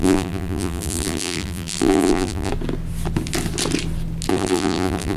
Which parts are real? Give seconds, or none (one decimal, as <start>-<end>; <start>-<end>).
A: 2.5-4.3